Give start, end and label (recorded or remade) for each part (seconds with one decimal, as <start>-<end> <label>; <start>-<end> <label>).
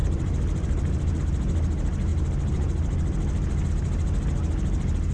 0.0-1.2 remade; 1.2-5.1 recorded